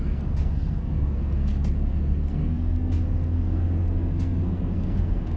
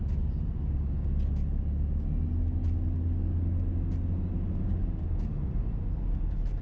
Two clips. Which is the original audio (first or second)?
second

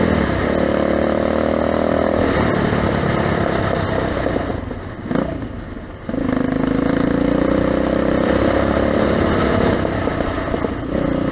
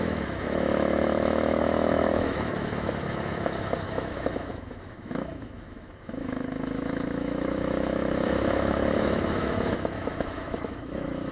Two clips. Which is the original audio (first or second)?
first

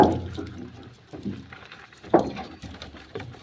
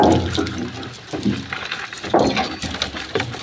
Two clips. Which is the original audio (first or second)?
second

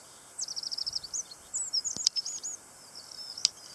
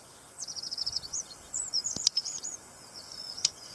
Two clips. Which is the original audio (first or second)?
first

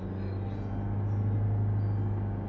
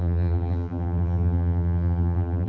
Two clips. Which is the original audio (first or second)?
first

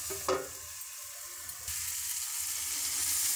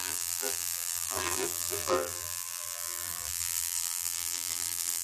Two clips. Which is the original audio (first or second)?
first